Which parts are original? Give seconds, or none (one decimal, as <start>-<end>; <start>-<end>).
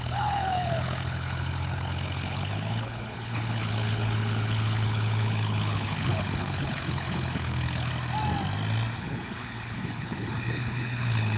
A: 7.9-9.0